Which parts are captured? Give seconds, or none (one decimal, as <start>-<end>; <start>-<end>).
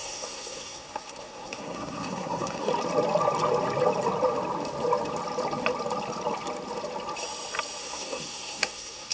2.7-7.8